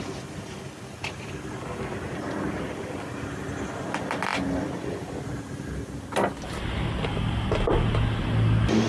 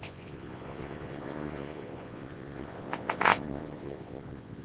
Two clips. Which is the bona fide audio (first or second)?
first